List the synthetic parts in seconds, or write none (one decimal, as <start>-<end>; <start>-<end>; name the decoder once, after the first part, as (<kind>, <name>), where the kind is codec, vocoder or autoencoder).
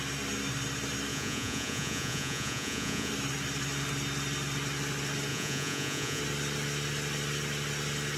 1.1-3.1 (vocoder, Vocos); 5.3-6.2